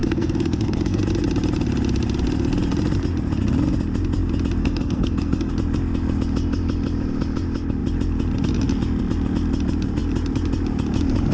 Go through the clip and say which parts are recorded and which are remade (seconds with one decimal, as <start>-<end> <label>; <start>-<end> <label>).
0.0-1.0 remade; 1.0-4.6 recorded; 4.6-5.5 remade; 5.5-11.3 recorded